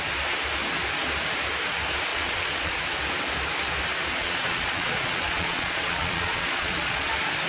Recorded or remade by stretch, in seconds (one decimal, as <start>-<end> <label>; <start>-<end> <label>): 0.0-2.1 recorded; 2.1-2.8 remade; 2.8-4.1 recorded; 4.1-7.1 remade; 7.1-7.5 recorded